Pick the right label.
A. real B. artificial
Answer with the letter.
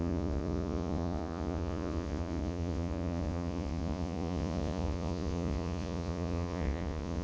B